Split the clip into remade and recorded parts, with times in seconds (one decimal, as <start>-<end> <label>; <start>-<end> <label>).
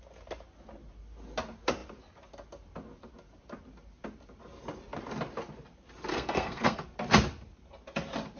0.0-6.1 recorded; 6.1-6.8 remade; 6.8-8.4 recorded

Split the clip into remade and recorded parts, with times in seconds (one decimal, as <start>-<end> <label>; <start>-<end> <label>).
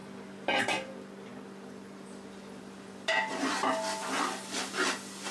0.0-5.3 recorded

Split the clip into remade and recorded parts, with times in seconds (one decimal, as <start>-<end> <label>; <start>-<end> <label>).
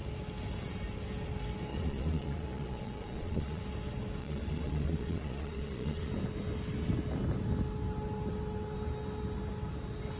0.0-1.7 recorded; 1.7-3.6 remade; 3.6-4.2 recorded; 4.2-6.1 remade; 6.1-10.2 recorded